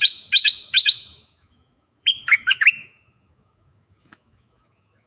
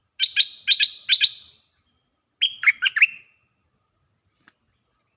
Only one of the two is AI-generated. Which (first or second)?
first